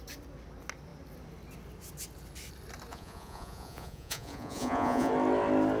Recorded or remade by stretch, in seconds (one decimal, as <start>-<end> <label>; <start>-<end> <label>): 0.0-2.9 recorded; 2.9-5.1 remade; 5.1-5.8 recorded